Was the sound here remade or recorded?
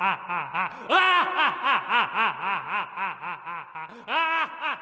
recorded